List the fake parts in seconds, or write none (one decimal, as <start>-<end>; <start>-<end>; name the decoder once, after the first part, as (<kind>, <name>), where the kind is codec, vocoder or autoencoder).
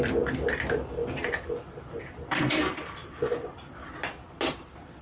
none